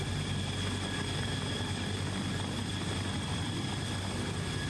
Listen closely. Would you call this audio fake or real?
real